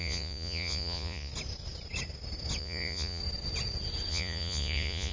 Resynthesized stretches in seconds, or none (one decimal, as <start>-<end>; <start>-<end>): 0.0-1.3; 2.6-3.2; 4.1-5.1